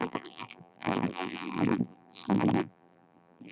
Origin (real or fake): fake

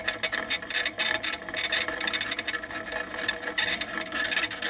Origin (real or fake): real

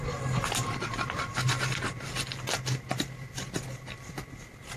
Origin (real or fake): real